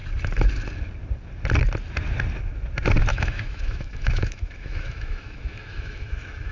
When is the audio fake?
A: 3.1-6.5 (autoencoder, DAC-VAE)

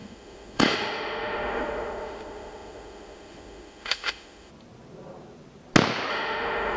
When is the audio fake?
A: 0.0-4.5 (autoencoder, DAC-VAE); 6.1-6.8

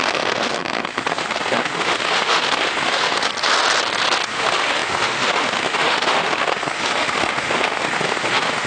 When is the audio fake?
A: 0.0-3.3 (autoencoder, DAC-VAE); 4.3-8.7

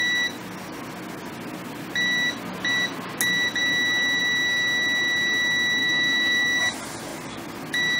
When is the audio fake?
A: 5.8-6.6 (autoencoder, DAC-VAE)

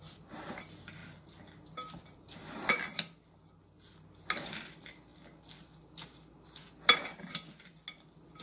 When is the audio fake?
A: none

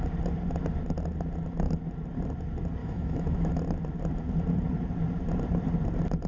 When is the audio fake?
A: 2.8-3.5 (autoencoder, DAC-VAE)